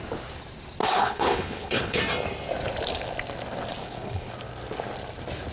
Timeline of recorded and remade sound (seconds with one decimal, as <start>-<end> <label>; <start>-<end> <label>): 0.0-0.8 recorded; 0.8-2.0 remade; 2.0-3.8 recorded; 3.8-4.3 remade; 4.3-5.5 recorded